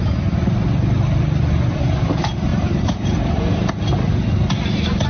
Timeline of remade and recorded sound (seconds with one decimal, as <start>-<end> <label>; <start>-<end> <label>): 0.0-2.5 recorded; 2.5-3.7 remade; 3.7-5.1 recorded